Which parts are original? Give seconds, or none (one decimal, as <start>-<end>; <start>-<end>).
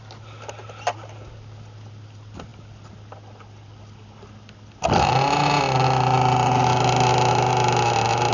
0.0-8.3